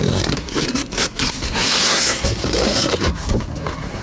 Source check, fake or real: fake